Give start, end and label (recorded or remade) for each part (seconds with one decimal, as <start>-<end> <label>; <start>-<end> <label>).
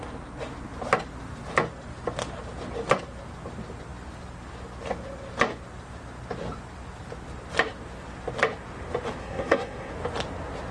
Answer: 0.0-9.2 recorded; 9.2-9.9 remade; 9.9-10.7 recorded